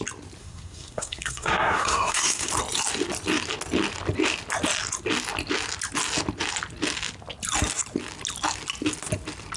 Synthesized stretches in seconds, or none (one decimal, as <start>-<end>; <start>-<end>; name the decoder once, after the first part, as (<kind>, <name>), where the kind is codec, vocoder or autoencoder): 0.4-2.5 (codec, SNAC)